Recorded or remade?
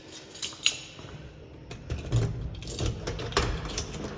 recorded